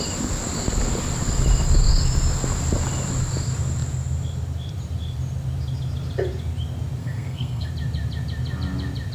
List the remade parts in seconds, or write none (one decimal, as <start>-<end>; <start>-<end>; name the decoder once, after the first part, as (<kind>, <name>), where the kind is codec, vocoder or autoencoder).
7.0-7.7 (codec, SNAC)